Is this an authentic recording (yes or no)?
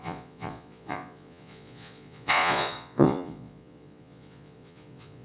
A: no